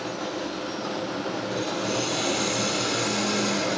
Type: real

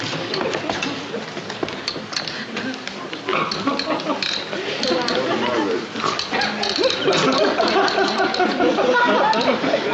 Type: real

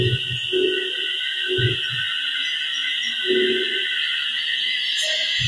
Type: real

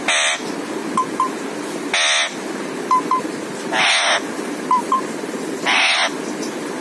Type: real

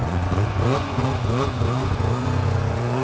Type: fake